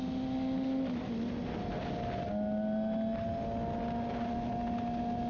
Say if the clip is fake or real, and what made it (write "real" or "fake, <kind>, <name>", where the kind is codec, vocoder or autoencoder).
real